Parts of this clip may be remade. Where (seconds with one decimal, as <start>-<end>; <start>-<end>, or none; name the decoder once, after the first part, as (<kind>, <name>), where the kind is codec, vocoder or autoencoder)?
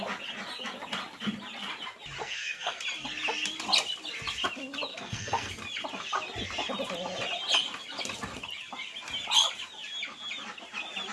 2.2-2.8 (codec, SNAC); 4.9-5.5